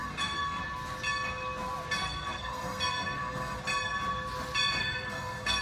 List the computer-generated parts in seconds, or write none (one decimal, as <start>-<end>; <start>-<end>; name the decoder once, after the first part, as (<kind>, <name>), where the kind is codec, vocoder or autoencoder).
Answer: 0.0-0.6 (codec, SNAC); 2.0-3.6; 4.8-5.6

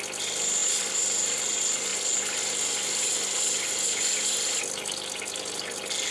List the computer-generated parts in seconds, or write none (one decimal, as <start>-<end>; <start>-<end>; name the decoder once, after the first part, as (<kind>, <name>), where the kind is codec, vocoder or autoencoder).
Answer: none

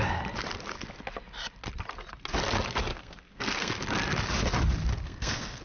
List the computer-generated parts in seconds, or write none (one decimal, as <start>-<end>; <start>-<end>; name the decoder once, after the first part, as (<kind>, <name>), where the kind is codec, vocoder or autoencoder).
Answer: 2.9-3.7 (codec, SNAC); 4.9-5.6

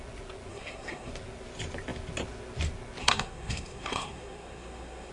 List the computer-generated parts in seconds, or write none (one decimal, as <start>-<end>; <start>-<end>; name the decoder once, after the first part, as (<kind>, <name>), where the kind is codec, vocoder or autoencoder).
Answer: 0.5-1.1 (codec, SNAC); 3.0-5.1